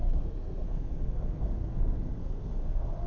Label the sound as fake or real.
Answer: fake